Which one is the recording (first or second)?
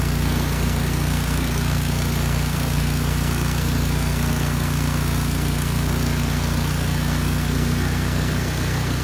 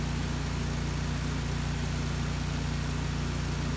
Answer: second